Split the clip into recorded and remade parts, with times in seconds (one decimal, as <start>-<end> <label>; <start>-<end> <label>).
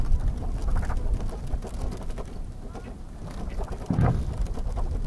0.0-5.1 recorded